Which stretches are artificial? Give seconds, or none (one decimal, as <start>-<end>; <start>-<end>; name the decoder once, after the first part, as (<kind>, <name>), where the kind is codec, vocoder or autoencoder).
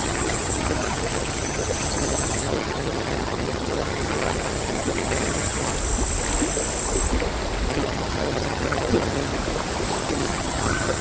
0.0-5.7 (vocoder, HiFi-GAN); 7.7-9.3; 10.0-11.0